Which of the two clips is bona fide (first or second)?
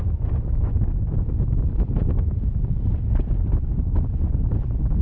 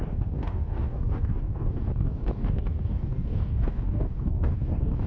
first